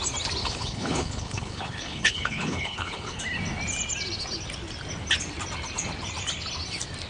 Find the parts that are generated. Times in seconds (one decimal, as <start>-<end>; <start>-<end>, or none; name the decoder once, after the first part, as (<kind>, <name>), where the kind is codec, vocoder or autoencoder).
0.4-3.2 (codec, HILCodec)